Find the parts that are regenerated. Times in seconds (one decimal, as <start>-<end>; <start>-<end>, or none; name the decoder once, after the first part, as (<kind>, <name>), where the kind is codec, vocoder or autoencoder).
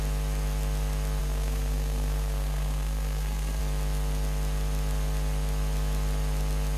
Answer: 1.2-3.6 (codec, SNAC)